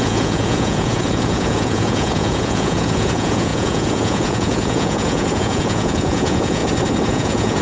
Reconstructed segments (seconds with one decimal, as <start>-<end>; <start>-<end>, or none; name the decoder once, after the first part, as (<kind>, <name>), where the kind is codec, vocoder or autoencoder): 0.0-6.6 (vocoder, Vocos); 7.1-7.6